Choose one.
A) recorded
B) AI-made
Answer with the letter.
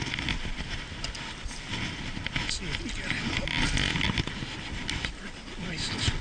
A